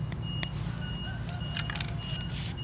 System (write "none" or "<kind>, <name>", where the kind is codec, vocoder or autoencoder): none